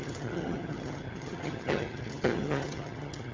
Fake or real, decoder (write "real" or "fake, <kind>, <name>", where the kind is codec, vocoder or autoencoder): fake, vocoder, HiFi-GAN